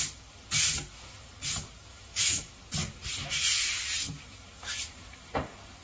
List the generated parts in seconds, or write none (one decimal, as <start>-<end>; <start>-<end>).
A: 1.9-2.6; 3.2-3.7